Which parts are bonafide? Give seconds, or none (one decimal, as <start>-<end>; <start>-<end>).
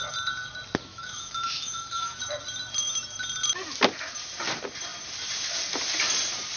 0.0-0.9; 2.2-6.6